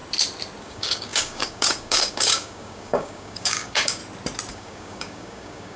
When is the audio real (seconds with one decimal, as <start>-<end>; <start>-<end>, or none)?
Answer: 0.0-0.6; 4.0-4.5